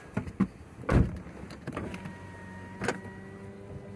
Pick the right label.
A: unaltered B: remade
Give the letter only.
A